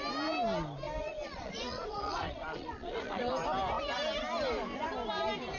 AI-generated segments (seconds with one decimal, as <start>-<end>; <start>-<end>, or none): 1.0-3.3